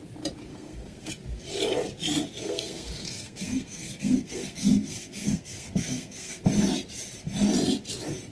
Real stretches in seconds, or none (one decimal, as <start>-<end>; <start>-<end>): 0.0-0.5; 1.1-2.4; 6.4-8.3